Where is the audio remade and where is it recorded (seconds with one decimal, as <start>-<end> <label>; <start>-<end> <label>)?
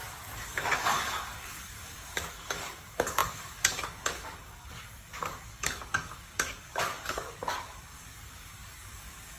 0.0-9.4 remade